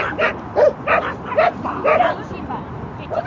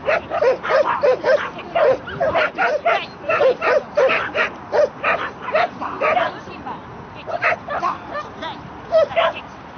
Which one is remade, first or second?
first